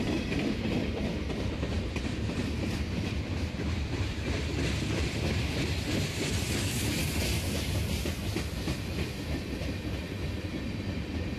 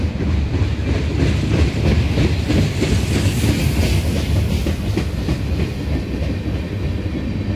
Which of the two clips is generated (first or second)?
first